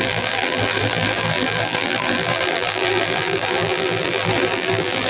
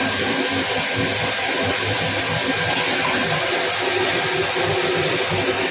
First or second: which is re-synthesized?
first